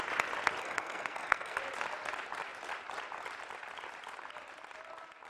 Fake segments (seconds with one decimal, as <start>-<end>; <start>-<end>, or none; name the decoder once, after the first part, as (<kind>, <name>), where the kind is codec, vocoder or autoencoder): 0.6-1.6 (codec, SNAC)